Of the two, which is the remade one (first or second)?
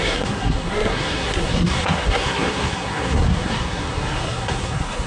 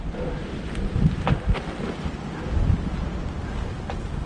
first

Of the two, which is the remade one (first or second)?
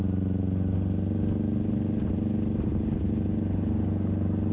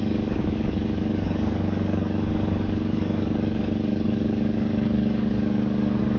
second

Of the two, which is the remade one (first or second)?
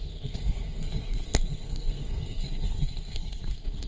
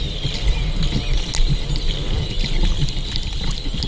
first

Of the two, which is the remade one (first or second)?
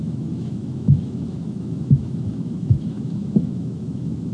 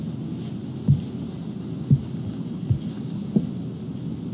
first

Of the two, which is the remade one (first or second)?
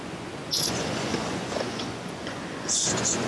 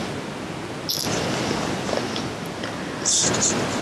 first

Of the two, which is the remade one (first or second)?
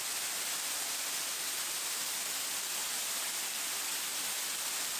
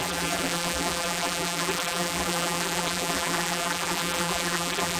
second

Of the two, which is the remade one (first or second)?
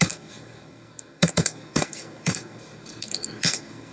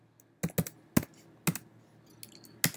first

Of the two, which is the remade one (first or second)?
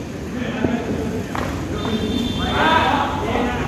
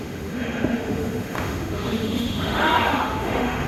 second